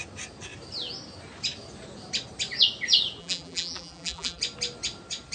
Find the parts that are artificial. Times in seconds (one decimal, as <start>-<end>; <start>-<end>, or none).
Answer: 3.2-4.4